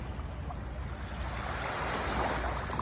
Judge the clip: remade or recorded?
recorded